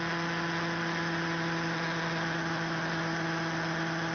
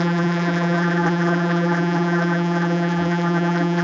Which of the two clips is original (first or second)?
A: first